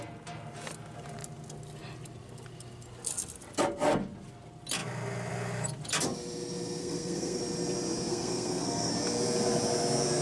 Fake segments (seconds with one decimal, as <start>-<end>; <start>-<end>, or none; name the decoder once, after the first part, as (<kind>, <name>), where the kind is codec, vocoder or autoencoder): 6.8-7.4 (codec, SNAC); 8.1-8.9